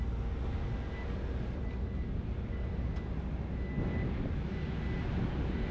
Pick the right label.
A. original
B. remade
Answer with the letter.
A